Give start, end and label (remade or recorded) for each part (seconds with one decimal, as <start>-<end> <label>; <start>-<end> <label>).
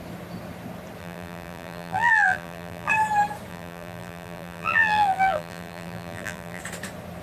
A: 0.0-1.0 recorded; 1.0-2.9 remade; 2.9-3.5 recorded; 3.5-6.6 remade; 6.6-7.2 recorded